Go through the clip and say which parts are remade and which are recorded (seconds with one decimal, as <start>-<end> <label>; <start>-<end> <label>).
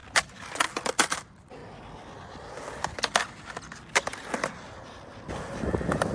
0.0-0.7 recorded; 0.7-1.6 remade; 1.6-4.8 recorded; 4.8-6.1 remade